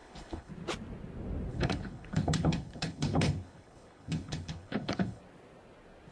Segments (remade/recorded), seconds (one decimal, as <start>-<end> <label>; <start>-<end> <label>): 0.0-0.5 remade; 0.5-1.5 recorded; 1.5-5.2 remade; 5.2-6.1 recorded